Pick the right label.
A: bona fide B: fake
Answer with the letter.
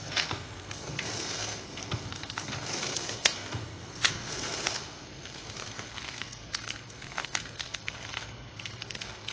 B